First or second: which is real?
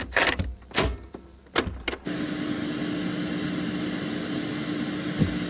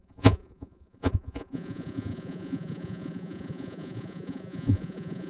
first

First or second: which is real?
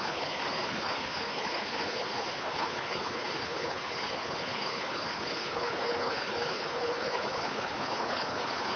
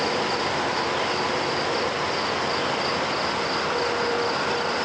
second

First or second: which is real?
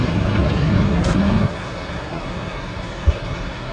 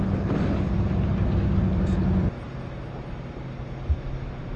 second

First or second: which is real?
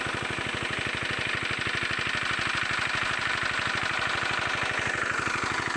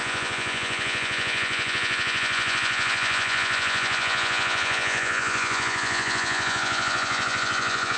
first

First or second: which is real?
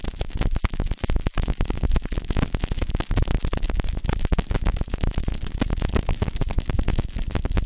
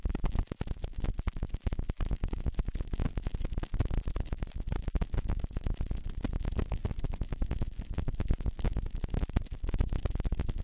second